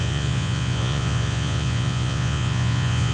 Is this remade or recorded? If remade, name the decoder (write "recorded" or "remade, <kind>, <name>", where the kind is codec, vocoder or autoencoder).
remade, vocoder, Vocos